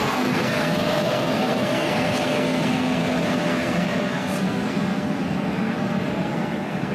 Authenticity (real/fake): fake